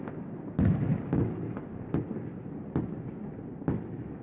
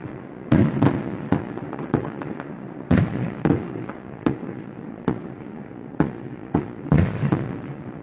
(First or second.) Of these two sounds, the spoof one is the second